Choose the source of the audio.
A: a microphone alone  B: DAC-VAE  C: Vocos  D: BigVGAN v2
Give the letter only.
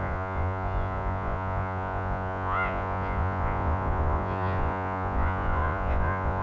C